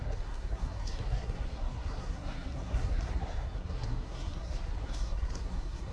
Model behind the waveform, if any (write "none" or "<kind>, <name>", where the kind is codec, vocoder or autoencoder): codec, SNAC